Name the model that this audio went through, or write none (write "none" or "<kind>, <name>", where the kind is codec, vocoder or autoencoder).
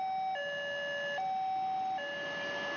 none